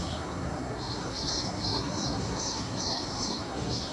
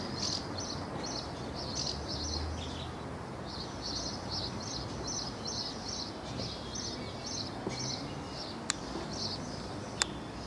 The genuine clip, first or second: second